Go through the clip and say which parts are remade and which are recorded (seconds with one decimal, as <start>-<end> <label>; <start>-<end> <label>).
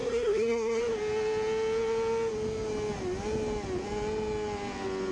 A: 0.0-0.8 remade; 0.8-5.1 recorded